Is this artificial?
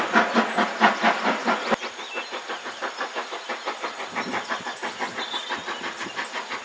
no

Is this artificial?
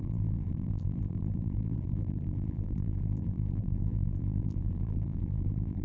yes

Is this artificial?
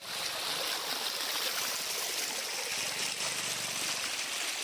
no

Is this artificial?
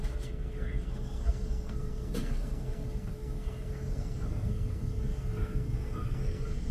yes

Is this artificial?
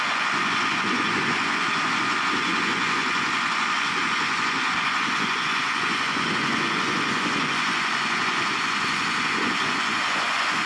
yes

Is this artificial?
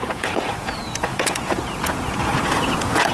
yes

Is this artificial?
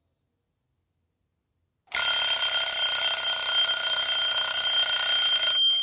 no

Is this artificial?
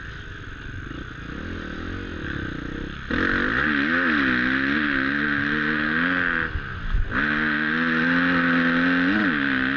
no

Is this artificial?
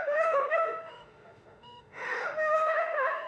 yes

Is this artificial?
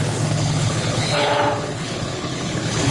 yes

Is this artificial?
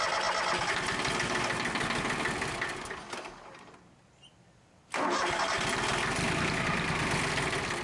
no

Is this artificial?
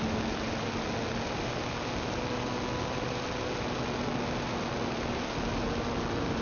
no